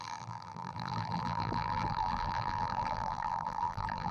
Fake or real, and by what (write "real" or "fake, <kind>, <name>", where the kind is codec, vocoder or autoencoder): fake, vocoder, BigVGAN v2